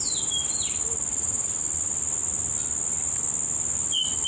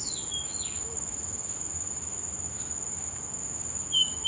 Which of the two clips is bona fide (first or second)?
first